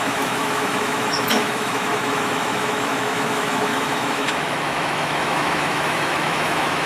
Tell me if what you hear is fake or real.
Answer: fake